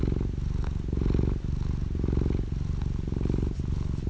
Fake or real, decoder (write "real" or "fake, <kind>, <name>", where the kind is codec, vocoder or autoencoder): real